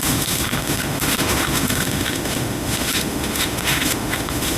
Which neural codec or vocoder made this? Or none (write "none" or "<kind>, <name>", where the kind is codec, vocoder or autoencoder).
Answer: autoencoder, DAC-VAE